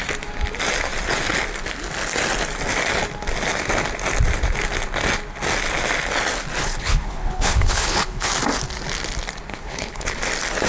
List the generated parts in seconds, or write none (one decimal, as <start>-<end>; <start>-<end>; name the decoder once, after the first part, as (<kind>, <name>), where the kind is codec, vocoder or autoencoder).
6.6-8.3 (codec, HILCodec); 9.5-10.2